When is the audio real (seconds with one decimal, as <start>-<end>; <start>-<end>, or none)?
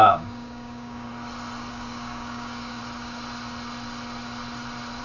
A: 1.1-1.7; 2.8-5.0